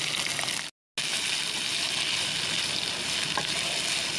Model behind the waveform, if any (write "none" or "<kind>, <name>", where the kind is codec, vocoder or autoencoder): none